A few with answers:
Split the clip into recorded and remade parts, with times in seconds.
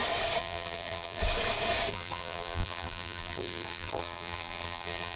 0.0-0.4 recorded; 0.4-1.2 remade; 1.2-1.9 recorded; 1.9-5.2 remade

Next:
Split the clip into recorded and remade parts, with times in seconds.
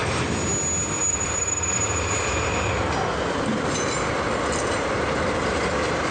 0.0-1.1 recorded; 1.1-2.1 remade; 2.1-6.1 recorded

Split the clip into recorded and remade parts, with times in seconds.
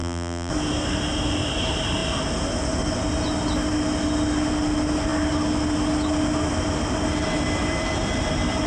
0.0-0.5 remade; 0.5-8.7 recorded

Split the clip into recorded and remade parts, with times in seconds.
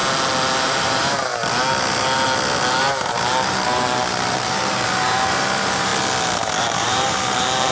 0.0-0.6 recorded; 0.6-1.3 remade; 1.3-2.8 recorded; 2.8-5.9 remade; 5.9-6.6 recorded; 6.6-7.7 remade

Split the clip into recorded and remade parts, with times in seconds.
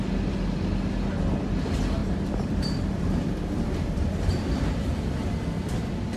0.0-2.0 recorded; 2.0-5.7 remade; 5.7-6.2 recorded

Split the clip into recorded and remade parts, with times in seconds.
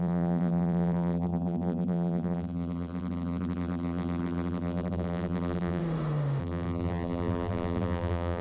0.0-5.8 remade; 5.8-6.4 recorded; 6.4-8.4 remade